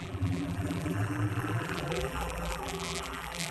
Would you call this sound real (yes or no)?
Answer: no